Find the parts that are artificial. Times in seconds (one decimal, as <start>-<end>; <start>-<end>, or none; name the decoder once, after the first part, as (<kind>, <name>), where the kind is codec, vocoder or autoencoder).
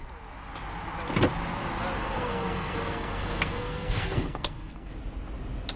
2.0-4.9 (codec, SNAC)